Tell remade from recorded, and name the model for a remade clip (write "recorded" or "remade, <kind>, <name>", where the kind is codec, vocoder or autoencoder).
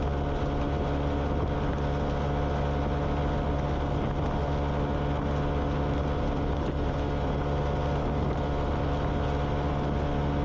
recorded